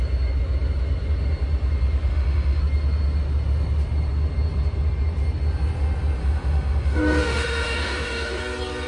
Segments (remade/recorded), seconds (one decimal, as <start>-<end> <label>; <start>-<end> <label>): 0.0-2.1 recorded; 2.1-2.6 remade; 2.6-6.2 recorded; 6.2-8.4 remade; 8.4-8.9 recorded